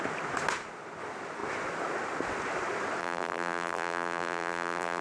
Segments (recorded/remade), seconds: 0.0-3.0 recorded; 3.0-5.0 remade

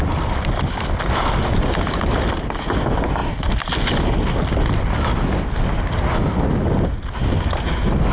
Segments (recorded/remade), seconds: 0.0-8.1 recorded

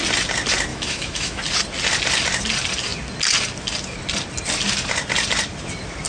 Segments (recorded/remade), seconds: 0.0-0.7 recorded; 0.7-1.4 remade; 1.4-6.1 recorded

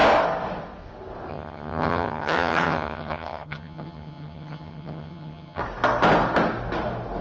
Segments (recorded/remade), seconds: 0.0-1.3 recorded; 1.3-5.6 remade; 5.6-7.2 recorded

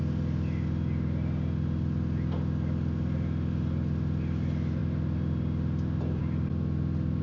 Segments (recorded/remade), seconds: 0.0-7.2 recorded

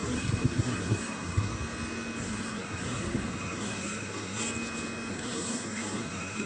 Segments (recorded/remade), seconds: 0.0-1.5 remade; 1.5-2.2 recorded; 2.2-4.4 remade; 4.4-5.1 recorded; 5.1-6.5 remade

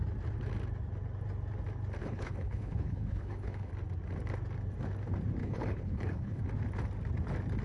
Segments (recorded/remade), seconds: 0.0-2.0 recorded; 2.0-3.7 remade; 3.7-5.4 recorded; 5.4-6.4 remade; 6.4-7.6 recorded

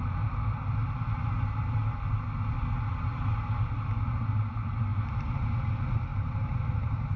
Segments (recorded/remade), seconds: 0.0-4.9 recorded; 4.9-5.5 remade; 5.5-6.1 recorded; 6.1-7.2 remade